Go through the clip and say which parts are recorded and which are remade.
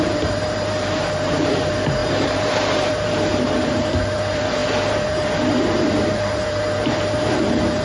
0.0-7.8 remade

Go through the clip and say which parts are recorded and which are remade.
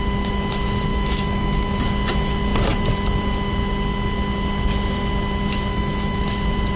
0.0-0.9 recorded; 0.9-1.8 remade; 1.8-5.7 recorded; 5.7-6.2 remade; 6.2-6.8 recorded